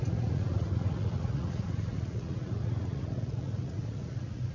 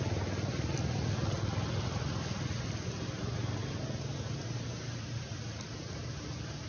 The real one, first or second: second